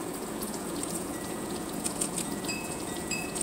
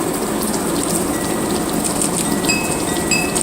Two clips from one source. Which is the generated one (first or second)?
first